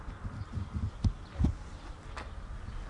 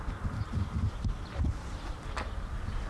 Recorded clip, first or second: first